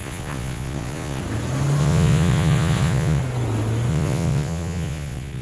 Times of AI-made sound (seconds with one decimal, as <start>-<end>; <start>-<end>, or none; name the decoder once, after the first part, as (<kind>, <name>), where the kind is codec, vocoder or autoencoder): 0.0-1.2 (vocoder, Vocos); 1.8-3.2; 3.9-5.4